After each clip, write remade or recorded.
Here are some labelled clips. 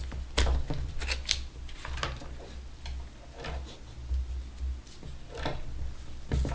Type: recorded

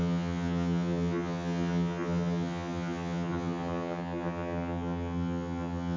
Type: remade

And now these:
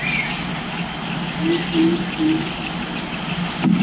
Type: recorded